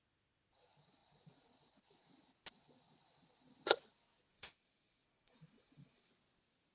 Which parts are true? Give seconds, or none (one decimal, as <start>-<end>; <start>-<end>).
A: 0.0-4.3; 6.1-6.7